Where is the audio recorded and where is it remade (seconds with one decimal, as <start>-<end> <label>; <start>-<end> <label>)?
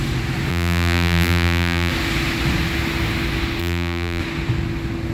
0.0-0.5 recorded; 0.5-1.9 remade; 1.9-3.6 recorded; 3.6-4.2 remade; 4.2-5.1 recorded